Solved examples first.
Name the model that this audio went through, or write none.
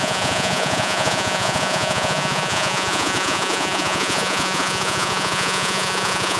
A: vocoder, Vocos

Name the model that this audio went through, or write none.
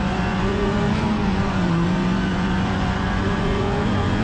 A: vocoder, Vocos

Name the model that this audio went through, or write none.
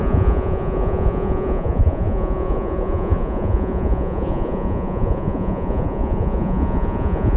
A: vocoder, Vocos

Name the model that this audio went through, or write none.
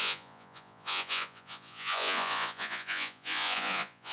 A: vocoder, Vocos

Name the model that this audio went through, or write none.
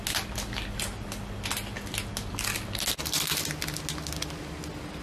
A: none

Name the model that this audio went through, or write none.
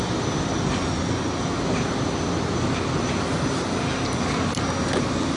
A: none